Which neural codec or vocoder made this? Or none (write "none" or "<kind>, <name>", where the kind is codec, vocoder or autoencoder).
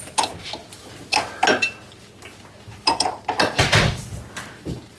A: none